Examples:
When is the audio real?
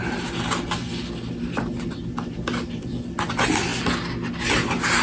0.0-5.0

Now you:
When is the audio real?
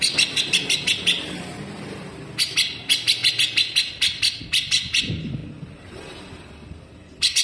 0.0-7.4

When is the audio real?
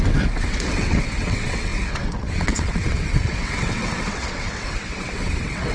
none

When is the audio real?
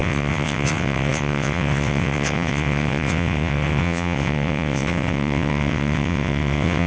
none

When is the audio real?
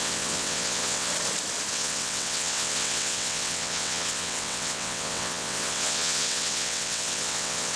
1.1-1.7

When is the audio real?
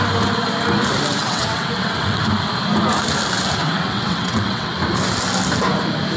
0.0-1.2; 2.2-3.6; 4.7-6.2